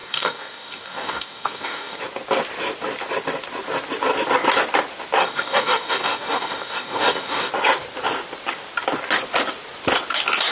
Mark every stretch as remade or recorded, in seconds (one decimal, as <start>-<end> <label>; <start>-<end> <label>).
0.0-2.0 remade; 2.0-5.2 recorded; 5.2-7.5 remade; 7.5-10.5 recorded